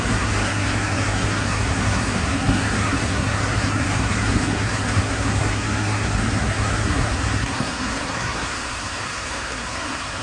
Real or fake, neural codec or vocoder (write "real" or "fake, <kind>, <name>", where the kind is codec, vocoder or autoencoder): fake, codec, SNAC